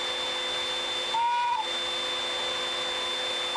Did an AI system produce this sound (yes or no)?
no